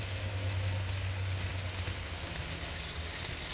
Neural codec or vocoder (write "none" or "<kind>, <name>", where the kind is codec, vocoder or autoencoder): none